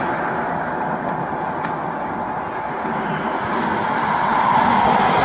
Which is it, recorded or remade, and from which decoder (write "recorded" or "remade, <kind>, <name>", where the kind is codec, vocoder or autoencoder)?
recorded